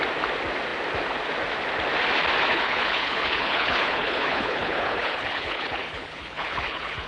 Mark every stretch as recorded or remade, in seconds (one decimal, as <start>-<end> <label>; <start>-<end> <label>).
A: 0.0-2.5 recorded; 2.5-7.1 remade